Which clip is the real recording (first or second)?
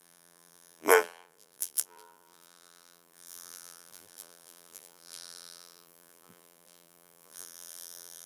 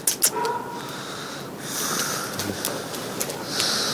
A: second